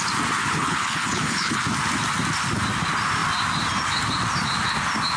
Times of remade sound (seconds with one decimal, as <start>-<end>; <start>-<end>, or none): 0.4-1.6